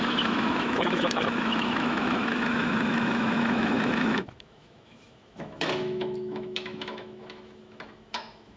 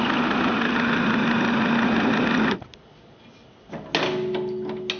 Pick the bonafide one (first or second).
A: second